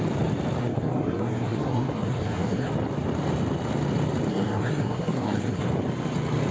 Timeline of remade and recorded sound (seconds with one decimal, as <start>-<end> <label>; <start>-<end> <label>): 0.0-0.6 recorded; 0.6-2.7 remade; 2.7-4.3 recorded; 4.3-5.7 remade; 5.7-6.5 recorded